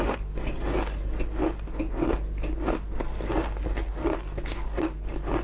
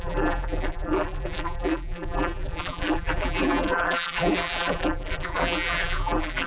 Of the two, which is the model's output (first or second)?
second